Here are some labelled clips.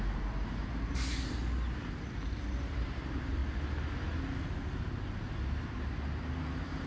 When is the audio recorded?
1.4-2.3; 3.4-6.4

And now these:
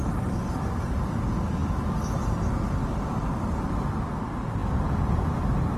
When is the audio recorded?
0.0-5.8

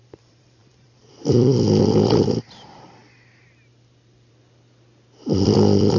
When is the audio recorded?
3.0-6.0

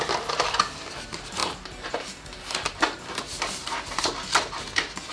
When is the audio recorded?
0.0-5.1